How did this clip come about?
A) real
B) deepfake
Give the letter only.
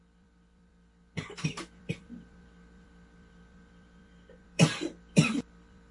B